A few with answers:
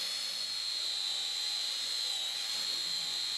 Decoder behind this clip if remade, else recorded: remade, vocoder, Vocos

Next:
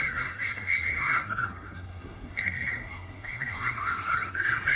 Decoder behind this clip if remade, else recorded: remade, codec, SNAC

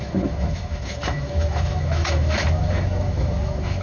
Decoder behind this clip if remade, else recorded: remade, autoencoder, DAC-VAE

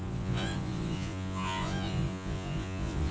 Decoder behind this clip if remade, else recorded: remade, vocoder, Vocos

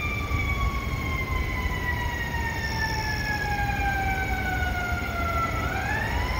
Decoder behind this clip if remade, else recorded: recorded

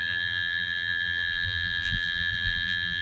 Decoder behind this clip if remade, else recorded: remade, vocoder, BigVGAN v2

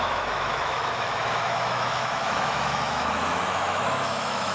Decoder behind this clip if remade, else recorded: remade, autoencoder, DAC-VAE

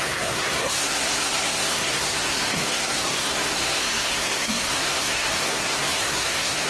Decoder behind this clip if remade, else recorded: remade, codec, SNAC